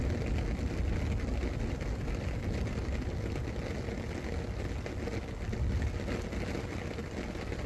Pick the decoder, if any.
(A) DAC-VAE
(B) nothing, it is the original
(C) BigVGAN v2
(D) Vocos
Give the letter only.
B